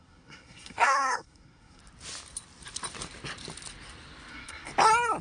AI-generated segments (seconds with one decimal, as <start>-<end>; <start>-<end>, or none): 0.0-1.8; 4.3-4.7